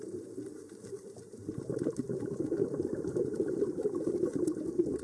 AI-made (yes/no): yes